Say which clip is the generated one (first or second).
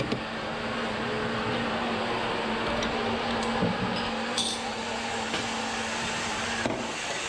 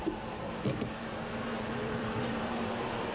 second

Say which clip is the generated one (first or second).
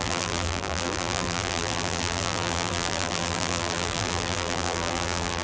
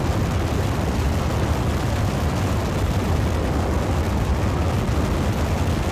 first